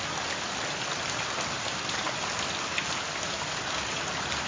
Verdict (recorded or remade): recorded